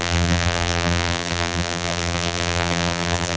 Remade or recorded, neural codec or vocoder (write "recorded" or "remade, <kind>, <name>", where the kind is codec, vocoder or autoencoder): remade, vocoder, BigVGAN v2